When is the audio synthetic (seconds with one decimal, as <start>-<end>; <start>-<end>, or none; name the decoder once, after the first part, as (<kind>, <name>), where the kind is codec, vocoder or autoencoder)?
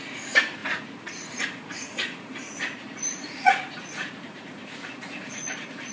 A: 0.0-5.9 (vocoder, Vocos)